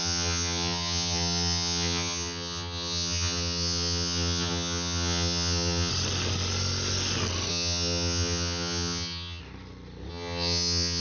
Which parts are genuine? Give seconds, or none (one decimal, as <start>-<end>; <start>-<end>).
5.9-7.5; 9.4-10.1